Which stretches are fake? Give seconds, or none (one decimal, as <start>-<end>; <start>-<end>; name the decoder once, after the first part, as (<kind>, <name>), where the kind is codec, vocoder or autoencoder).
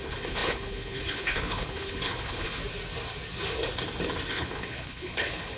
0.0-2.6 (codec, HILCodec); 4.3-5.6